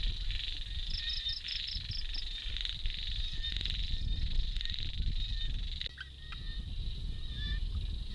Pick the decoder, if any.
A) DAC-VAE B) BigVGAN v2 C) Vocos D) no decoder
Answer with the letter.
D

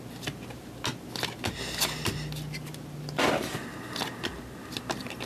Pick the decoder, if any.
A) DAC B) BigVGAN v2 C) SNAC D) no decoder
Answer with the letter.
D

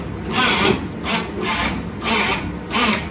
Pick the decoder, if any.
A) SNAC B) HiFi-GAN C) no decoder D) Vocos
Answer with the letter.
C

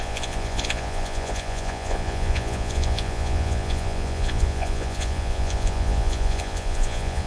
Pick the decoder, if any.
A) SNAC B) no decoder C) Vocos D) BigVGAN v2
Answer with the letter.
C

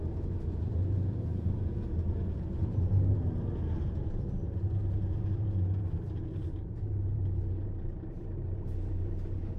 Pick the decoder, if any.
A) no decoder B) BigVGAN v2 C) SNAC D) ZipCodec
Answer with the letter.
B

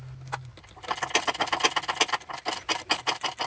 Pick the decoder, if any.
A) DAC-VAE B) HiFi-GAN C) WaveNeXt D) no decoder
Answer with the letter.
D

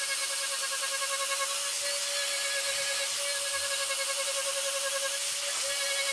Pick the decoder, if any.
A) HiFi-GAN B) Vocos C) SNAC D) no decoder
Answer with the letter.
D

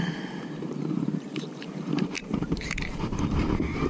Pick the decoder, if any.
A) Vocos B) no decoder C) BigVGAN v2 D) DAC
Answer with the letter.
C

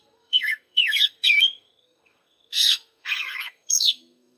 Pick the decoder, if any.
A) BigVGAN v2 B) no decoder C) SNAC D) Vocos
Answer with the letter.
C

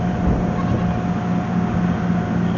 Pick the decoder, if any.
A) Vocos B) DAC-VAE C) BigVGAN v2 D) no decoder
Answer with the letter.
D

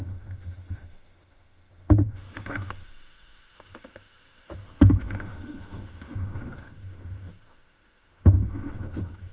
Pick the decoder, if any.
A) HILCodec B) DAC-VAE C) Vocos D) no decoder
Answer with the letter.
B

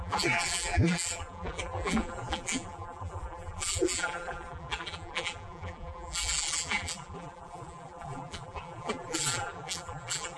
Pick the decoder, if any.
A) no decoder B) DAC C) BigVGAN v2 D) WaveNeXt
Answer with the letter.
C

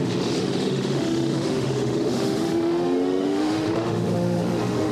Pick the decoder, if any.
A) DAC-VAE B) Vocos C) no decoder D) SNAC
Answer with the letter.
A